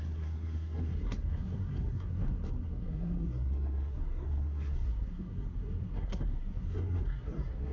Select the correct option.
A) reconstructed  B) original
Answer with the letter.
A